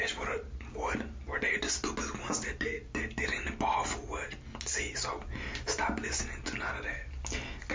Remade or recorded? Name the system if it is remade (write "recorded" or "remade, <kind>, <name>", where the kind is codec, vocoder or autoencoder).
recorded